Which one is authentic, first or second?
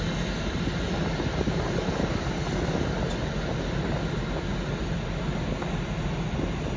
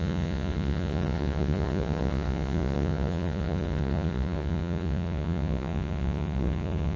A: first